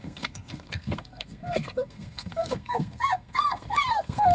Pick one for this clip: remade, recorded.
remade